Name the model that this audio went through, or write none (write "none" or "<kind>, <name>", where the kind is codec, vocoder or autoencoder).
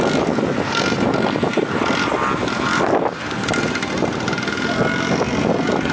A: none